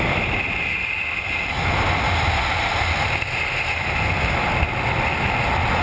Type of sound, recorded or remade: recorded